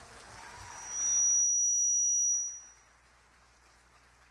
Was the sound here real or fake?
real